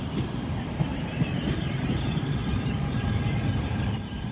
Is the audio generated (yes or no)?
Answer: yes